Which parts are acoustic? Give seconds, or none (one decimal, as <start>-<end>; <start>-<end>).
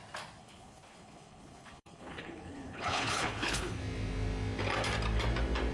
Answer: 0.0-0.4; 3.8-5.7